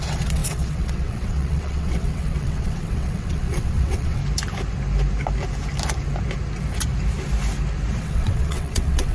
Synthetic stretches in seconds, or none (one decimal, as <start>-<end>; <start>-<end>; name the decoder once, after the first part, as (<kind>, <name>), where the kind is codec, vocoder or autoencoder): 0.0-4.2 (vocoder, WaveNeXt); 8.0-9.1

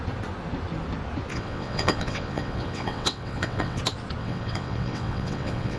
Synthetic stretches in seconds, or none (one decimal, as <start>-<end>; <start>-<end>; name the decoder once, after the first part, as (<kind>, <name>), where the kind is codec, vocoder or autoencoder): 1.3-3.8 (vocoder, WaveNeXt); 4.2-5.8

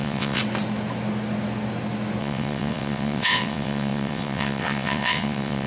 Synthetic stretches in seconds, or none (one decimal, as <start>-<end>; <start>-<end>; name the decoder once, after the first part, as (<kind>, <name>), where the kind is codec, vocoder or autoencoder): 0.0-0.4 (vocoder, WaveNeXt); 2.2-5.7

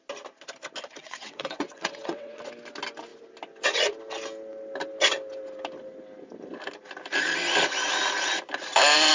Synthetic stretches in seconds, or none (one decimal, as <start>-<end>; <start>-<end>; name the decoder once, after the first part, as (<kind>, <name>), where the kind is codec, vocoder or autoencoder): 1.0-2.4 (vocoder, WaveNeXt)

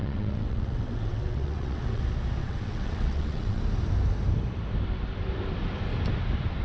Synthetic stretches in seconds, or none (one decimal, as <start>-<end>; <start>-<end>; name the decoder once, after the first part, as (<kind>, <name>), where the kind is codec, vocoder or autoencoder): 0.0-2.0 (vocoder, WaveNeXt); 2.4-3.6

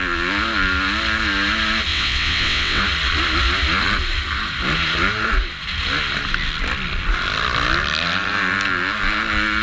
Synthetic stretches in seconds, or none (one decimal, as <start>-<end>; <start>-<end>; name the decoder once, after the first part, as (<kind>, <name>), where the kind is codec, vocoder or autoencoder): 1.9-2.8 (vocoder, WaveNeXt)

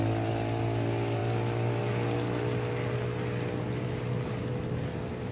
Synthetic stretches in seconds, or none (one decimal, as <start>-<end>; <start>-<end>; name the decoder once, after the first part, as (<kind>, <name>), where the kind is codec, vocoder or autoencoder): none